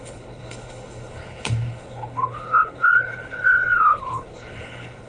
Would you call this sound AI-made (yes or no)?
yes